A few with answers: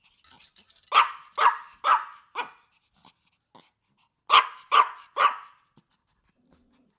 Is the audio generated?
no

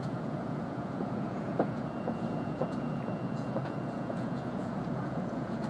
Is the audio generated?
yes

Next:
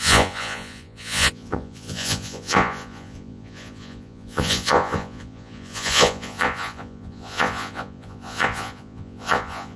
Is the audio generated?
yes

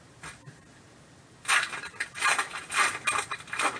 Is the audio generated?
no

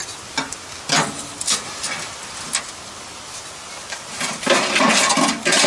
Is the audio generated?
no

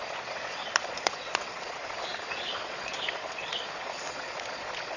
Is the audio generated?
yes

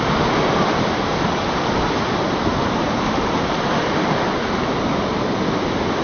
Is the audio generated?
no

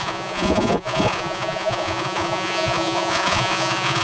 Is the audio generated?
yes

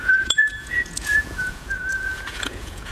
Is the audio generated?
yes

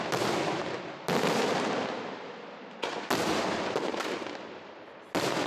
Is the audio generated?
no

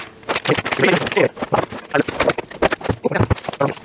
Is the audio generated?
no